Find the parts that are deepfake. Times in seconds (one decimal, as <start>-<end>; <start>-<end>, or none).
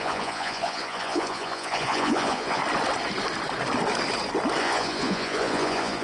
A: 0.0-2.6; 4.6-6.0